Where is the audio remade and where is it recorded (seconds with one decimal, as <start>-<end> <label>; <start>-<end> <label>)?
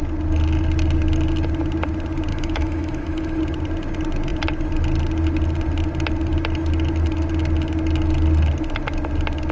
0.0-2.3 recorded; 2.3-3.4 remade; 3.4-9.5 recorded